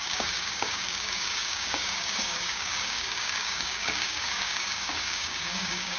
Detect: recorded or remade remade